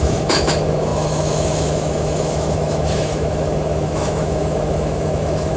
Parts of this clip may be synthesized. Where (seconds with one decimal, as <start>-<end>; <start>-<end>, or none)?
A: 0.0-5.6